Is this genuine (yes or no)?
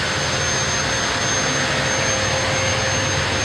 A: yes